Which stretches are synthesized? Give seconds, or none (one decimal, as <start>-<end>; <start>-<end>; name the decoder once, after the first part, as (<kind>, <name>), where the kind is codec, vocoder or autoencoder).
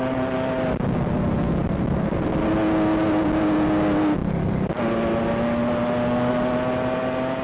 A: none